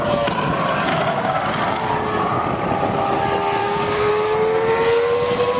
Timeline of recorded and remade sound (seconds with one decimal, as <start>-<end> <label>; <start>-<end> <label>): 0.0-0.9 recorded; 0.9-1.5 remade; 1.5-3.6 recorded; 3.6-4.1 remade; 4.1-5.6 recorded

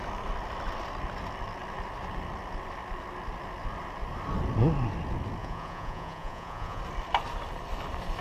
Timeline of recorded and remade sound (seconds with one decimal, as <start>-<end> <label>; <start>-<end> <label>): 0.0-5.4 recorded; 5.4-6.8 remade; 6.8-8.2 recorded